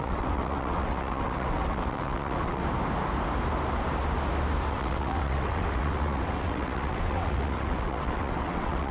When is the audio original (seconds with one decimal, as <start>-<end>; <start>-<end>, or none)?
2.6-4.7